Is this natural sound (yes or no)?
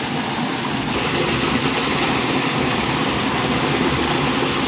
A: yes